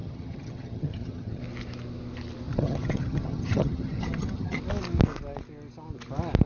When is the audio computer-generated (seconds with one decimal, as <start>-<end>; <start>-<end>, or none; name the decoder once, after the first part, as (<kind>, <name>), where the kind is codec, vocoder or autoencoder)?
0.0-1.4 (vocoder, HiFi-GAN); 2.5-4.6